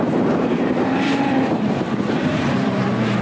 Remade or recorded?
remade